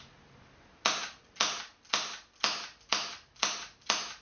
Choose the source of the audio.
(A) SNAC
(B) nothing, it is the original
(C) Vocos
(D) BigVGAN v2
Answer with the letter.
B